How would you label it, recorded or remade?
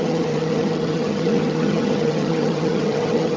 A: remade